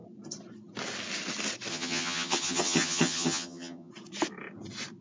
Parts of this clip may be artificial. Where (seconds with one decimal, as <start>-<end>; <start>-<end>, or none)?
1.7-3.9